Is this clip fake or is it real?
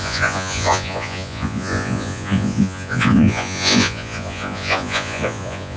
fake